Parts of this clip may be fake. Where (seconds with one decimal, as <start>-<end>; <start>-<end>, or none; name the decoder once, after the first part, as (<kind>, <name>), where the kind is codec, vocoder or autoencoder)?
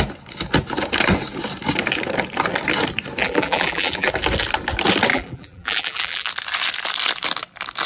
3.2-4.1 (vocoder, BigVGAN v2); 5.1-6.3